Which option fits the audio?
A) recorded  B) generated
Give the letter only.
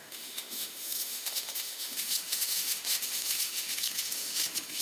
B